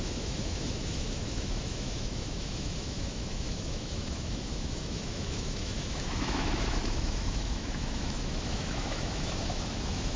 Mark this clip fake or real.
fake